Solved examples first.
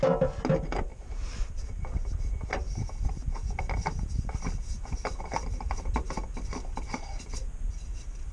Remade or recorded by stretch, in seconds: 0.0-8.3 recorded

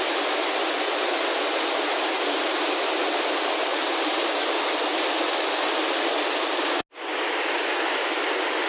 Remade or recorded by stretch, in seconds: 0.0-8.7 recorded

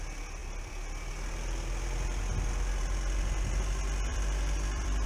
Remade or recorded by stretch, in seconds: 0.0-4.1 recorded; 4.1-5.1 remade

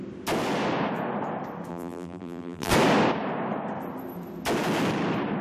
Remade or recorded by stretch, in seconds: 0.0-1.7 recorded; 1.7-2.7 remade; 2.7-5.4 recorded

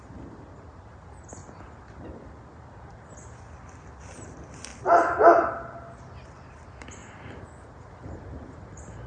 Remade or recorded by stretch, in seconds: 0.0-4.7 recorded; 4.7-5.5 remade; 5.5-7.0 recorded; 7.0-8.1 remade; 8.1-9.1 recorded